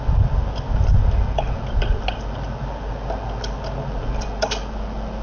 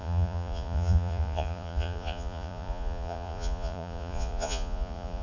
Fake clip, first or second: second